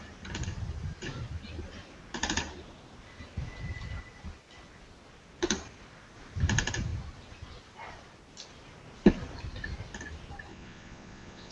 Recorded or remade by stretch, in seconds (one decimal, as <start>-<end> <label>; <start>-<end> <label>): 0.0-10.5 recorded; 10.5-11.5 remade